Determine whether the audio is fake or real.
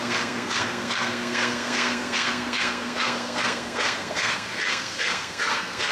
fake